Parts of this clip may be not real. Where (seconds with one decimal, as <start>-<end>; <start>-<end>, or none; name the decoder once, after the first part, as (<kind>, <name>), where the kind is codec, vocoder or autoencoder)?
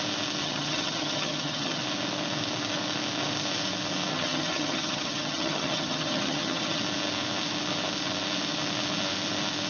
0.4-1.8 (vocoder, HiFi-GAN); 4.1-6.8